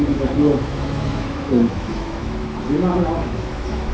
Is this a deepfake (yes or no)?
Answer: yes